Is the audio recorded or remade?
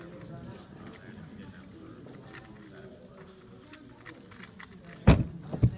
recorded